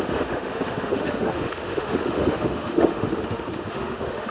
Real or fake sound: fake